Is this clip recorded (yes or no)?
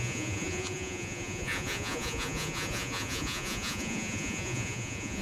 no